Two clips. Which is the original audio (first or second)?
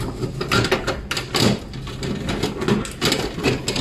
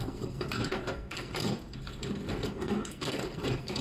first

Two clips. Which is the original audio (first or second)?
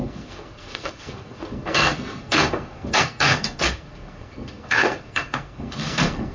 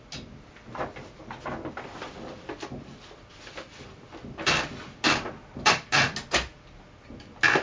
second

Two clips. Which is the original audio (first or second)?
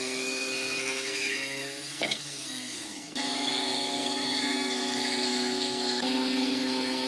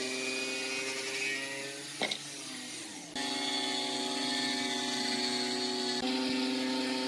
second